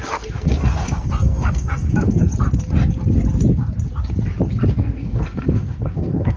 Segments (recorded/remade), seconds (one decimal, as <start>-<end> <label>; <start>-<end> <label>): 0.0-2.3 remade; 2.3-4.7 recorded; 4.7-6.4 remade